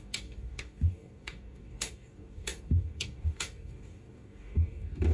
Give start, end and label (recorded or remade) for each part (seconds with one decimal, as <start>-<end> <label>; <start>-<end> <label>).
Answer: 0.0-5.1 remade